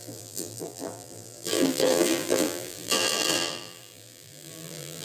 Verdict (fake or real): fake